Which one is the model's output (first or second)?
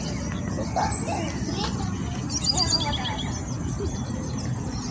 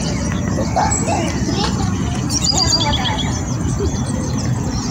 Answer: second